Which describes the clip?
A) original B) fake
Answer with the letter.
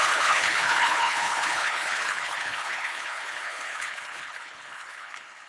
B